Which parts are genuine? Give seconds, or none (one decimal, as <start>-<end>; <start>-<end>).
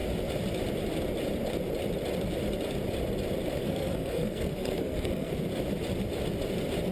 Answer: 0.0-3.6; 5.3-6.9